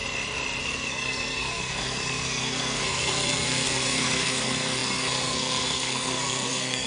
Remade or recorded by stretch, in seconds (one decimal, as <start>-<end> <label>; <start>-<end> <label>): 0.0-0.6 recorded; 0.6-6.9 remade